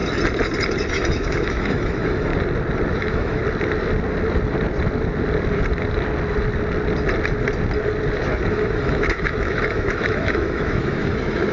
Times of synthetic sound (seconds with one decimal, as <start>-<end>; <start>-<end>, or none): 0.9-2.3; 2.9-3.4; 8.5-11.5